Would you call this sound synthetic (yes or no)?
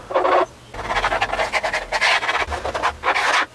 no